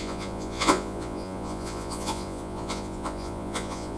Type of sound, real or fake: fake